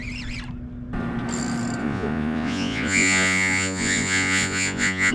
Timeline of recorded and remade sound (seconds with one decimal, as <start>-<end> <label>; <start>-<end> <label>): 0.0-1.8 recorded; 1.8-5.1 remade